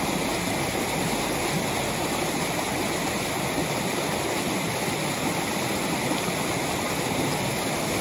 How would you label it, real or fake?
real